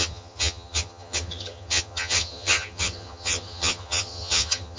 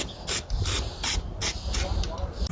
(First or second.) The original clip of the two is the second